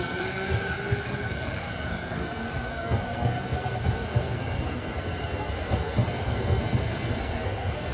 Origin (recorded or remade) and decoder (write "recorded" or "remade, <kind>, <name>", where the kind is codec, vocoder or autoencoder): remade, codec, SNAC